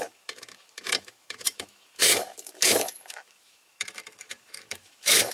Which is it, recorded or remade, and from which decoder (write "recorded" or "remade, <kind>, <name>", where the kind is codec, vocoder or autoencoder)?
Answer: remade, autoencoder, DAC-VAE